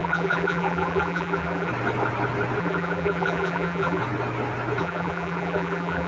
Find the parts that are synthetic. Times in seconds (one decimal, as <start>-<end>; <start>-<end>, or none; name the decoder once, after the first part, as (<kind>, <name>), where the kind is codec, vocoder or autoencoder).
0.0-1.7 (vocoder, BigVGAN v2); 2.6-4.0; 4.8-6.1